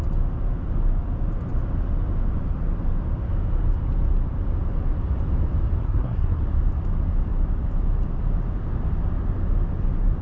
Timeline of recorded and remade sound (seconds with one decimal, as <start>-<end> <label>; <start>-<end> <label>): 0.0-5.8 recorded; 5.8-6.4 remade; 6.4-10.2 recorded